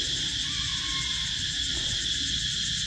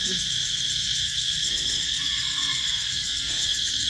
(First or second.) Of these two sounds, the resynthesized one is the second